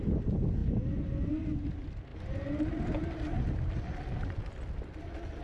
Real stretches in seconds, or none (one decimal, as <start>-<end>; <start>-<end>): 0.0-5.4